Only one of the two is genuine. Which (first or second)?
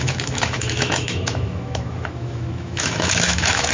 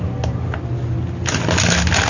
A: second